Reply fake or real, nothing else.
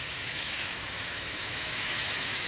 fake